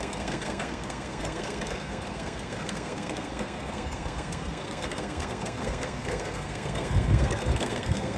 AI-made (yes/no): yes